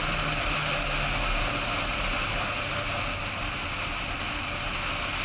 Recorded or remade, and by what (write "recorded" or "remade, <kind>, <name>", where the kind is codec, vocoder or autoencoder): recorded